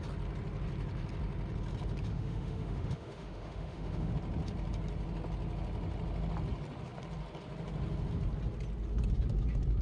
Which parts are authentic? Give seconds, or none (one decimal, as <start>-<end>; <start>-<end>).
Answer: 0.0-2.1; 4.1-9.8